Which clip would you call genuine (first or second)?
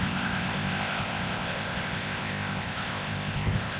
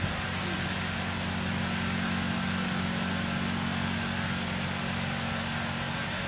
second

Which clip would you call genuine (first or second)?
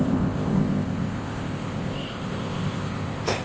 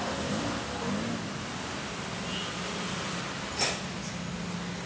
second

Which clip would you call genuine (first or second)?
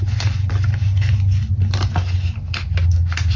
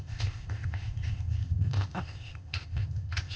first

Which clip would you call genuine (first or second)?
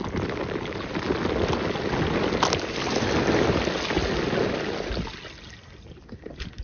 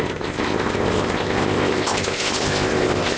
first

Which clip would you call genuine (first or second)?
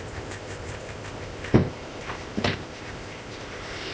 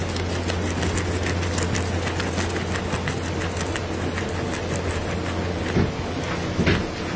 second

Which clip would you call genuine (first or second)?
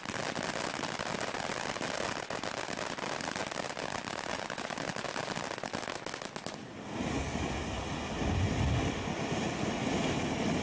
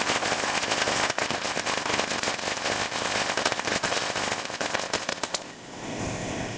first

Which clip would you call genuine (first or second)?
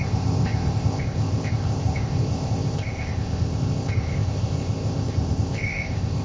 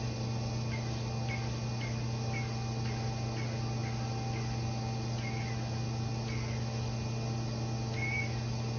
second